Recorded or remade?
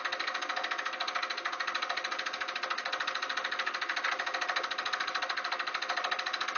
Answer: recorded